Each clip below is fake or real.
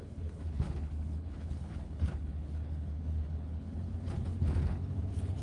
fake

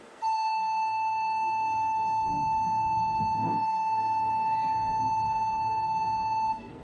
fake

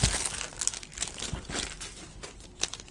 real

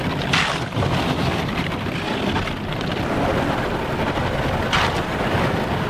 real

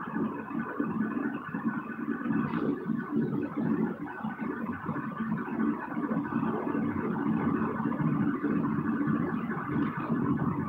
real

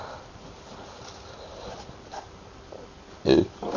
real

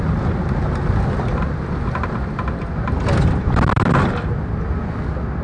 real